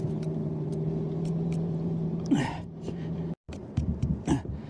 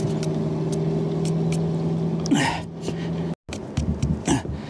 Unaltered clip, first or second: second